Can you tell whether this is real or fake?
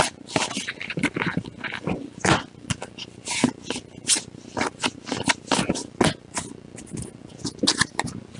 real